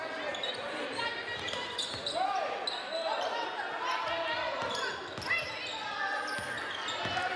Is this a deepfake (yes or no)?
no